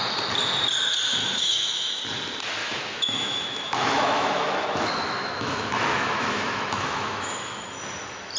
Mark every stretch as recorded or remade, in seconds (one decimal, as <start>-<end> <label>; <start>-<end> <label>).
0.0-1.2 recorded; 1.2-2.0 remade; 2.0-2.6 recorded; 2.6-7.6 remade; 7.6-8.4 recorded